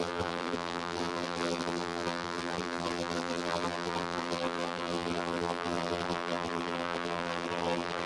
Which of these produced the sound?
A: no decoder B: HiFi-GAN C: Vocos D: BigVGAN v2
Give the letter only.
D